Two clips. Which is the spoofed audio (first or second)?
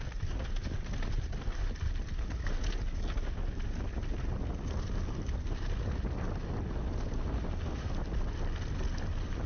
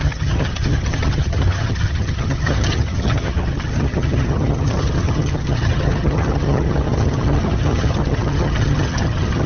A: second